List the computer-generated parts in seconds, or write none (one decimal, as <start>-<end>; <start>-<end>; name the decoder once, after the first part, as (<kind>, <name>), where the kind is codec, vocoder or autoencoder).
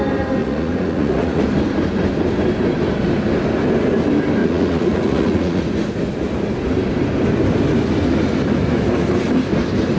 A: 0.4-1.4 (vocoder, Vocos); 4.4-5.6